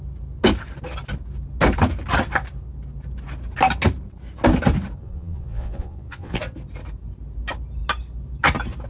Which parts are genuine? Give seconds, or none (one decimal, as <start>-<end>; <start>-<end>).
0.0-5.0; 6.4-8.9